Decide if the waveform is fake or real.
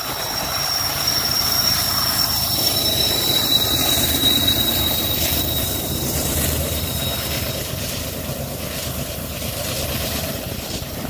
fake